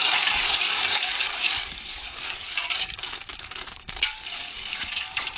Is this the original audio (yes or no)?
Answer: no